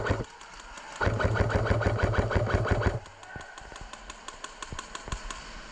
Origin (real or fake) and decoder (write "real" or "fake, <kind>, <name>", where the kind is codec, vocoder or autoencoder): real